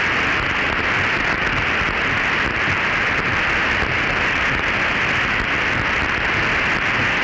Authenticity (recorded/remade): recorded